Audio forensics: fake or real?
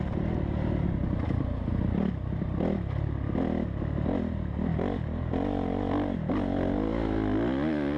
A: real